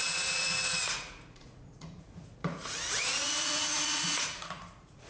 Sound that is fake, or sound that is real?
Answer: fake